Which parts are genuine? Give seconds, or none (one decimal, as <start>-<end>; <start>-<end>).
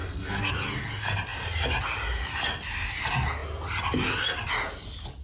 0.5-5.2